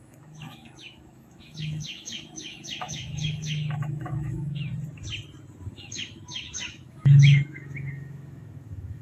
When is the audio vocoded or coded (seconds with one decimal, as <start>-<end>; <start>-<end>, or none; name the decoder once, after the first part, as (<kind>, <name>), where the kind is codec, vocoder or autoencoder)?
0.0-4.7 (autoencoder, DAC-VAE); 5.8-9.0